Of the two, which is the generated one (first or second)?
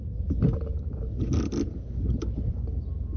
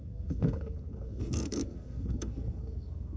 second